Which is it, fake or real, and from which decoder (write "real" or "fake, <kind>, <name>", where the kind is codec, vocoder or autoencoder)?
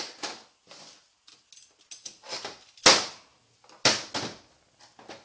real